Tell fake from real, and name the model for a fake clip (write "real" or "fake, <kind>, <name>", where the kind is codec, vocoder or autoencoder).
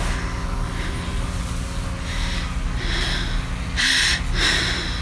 real